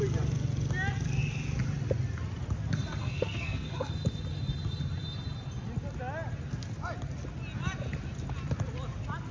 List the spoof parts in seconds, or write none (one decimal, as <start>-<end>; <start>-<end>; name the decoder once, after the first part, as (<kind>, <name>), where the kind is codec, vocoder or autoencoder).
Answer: 3.0-3.9 (codec, SNAC)